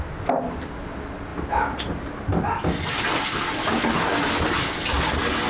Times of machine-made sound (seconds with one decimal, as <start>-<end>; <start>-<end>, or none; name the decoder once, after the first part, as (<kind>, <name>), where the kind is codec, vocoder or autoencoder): none